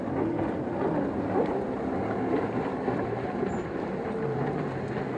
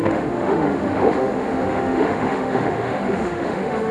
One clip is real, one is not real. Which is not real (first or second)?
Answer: second